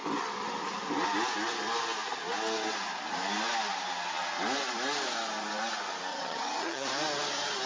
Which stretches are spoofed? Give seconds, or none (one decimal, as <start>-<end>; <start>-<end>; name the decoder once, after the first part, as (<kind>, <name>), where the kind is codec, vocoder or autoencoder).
6.1-6.9 (vocoder, HiFi-GAN)